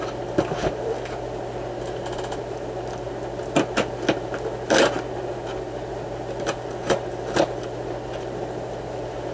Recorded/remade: recorded